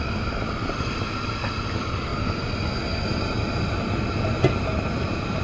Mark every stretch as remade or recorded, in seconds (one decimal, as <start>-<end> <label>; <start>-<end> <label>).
0.0-2.1 remade; 2.1-5.4 recorded